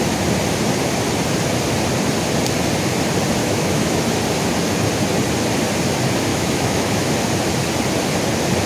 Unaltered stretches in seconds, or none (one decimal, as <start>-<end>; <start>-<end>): 0.0-3.4; 4.0-6.3; 7.1-8.7